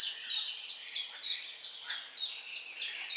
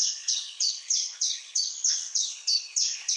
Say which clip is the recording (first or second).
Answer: first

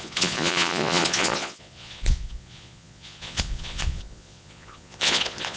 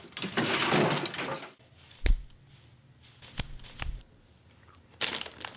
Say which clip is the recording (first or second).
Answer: second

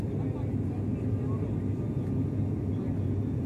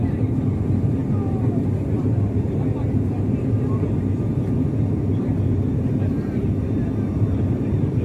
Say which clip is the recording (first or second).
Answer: first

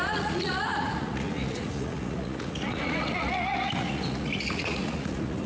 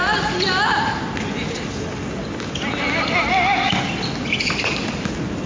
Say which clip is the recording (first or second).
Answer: second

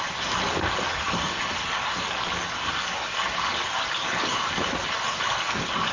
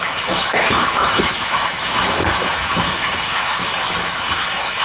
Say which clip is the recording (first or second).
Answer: first